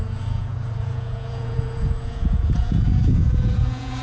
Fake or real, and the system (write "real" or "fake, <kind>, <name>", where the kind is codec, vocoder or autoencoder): fake, vocoder, Vocos